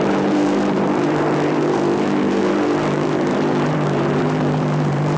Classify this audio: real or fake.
fake